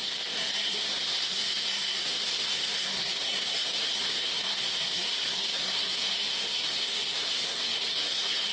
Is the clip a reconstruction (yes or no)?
yes